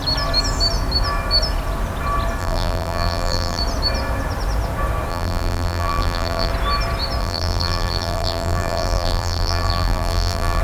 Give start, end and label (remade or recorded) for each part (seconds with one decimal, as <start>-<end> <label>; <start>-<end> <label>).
0.0-2.4 recorded; 2.4-3.6 remade; 3.6-5.1 recorded; 5.1-6.5 remade; 6.5-7.2 recorded; 7.2-10.6 remade